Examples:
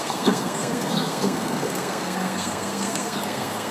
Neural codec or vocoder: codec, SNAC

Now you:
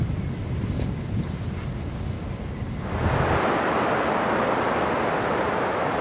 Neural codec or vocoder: none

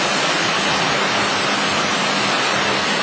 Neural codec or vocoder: none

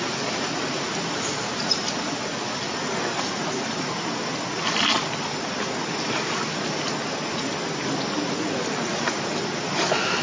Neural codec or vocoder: none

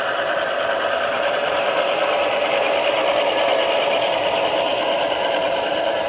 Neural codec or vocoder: none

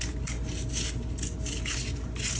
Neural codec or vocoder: none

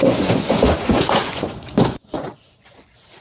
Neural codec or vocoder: vocoder, Vocos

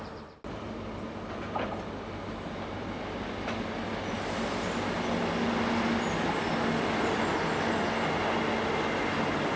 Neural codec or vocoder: none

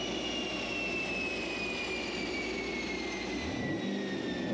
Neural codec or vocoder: none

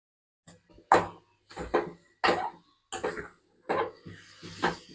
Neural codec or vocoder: none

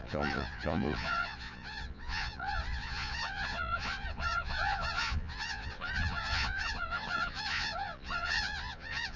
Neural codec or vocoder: vocoder, Vocos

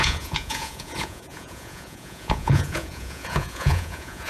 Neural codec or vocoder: vocoder, Vocos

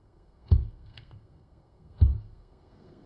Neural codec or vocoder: codec, SNAC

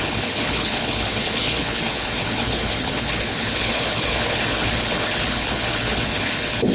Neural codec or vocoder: codec, HILCodec